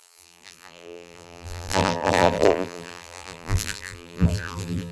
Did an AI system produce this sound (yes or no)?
yes